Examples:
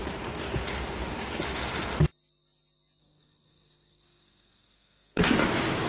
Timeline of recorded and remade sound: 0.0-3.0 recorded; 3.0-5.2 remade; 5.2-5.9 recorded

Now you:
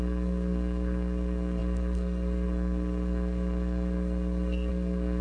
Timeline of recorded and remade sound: 0.0-5.2 remade

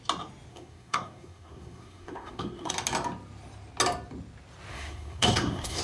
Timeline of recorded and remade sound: 0.0-0.5 recorded; 0.5-2.7 remade; 2.7-4.7 recorded; 4.7-5.8 remade

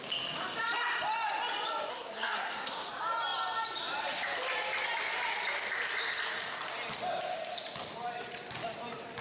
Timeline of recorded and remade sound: 0.0-1.9 recorded; 1.9-2.9 remade; 2.9-9.2 recorded

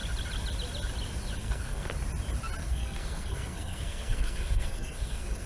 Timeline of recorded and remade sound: 0.0-1.4 recorded; 1.4-1.9 remade; 1.9-2.6 recorded; 2.6-5.5 remade

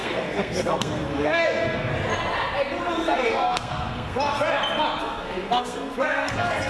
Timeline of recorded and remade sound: 0.0-1.9 remade; 1.9-2.9 recorded; 2.9-4.4 remade; 4.4-5.0 recorded; 5.0-6.7 remade

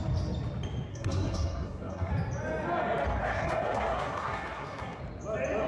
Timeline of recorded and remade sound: 0.0-0.9 recorded; 0.9-2.1 remade; 2.1-3.2 recorded; 3.2-5.0 remade; 5.0-5.7 recorded